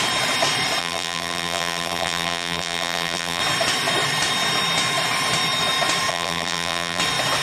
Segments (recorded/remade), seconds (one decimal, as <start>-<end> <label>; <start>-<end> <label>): 0.0-0.8 recorded; 0.8-3.4 remade; 3.4-6.1 recorded; 6.1-7.0 remade; 7.0-7.4 recorded